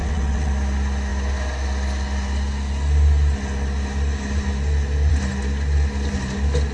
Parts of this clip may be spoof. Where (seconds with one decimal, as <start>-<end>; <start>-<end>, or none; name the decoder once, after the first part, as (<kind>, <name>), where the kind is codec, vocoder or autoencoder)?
0.0-0.5 (vocoder, WaveNeXt)